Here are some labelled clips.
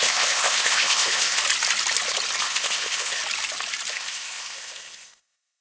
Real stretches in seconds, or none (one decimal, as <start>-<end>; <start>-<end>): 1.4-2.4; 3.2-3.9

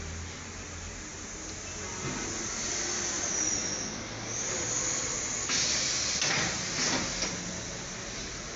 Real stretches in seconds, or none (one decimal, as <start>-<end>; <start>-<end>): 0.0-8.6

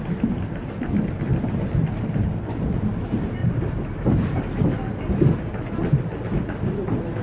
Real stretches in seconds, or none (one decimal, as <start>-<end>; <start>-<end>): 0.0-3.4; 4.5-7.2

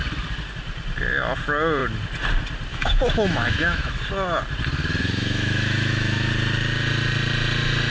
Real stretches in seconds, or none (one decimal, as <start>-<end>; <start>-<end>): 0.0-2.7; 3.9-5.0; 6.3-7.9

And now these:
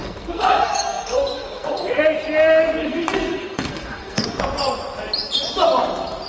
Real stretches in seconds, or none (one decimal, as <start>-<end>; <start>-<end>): 2.0-2.8; 4.4-6.3